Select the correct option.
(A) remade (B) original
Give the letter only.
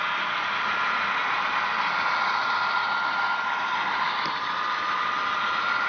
B